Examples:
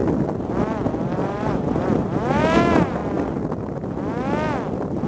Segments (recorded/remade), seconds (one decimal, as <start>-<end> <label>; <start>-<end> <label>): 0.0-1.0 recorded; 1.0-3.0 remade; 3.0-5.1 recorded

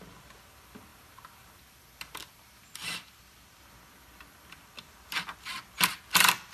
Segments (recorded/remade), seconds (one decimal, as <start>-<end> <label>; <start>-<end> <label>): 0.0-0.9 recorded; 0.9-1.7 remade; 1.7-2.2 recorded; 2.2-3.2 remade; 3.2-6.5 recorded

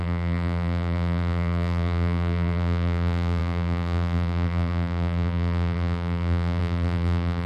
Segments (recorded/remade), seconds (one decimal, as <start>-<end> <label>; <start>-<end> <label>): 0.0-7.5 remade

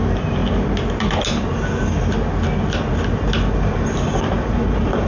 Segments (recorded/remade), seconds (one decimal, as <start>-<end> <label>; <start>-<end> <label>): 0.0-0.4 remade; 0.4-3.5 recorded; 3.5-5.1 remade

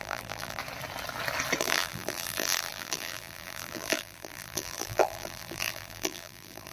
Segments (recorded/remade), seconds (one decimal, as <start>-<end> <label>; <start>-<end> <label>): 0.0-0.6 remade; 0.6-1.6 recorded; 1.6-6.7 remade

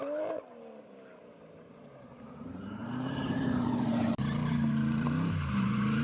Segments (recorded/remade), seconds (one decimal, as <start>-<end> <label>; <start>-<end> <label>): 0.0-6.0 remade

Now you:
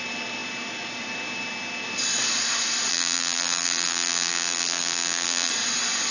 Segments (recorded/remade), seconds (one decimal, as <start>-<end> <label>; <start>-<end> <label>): 0.0-2.9 recorded; 2.9-5.5 remade; 5.5-6.1 recorded